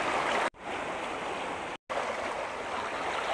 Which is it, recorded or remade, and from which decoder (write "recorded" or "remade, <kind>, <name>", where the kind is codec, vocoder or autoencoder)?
recorded